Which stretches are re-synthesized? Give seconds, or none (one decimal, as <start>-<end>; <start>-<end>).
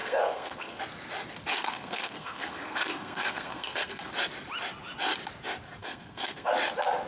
0.0-0.8; 1.5-4.1; 5.8-6.5